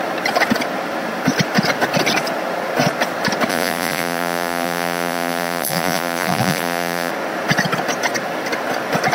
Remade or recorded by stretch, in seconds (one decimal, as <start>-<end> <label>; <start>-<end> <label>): 0.0-3.5 recorded; 3.5-7.1 remade; 7.1-9.1 recorded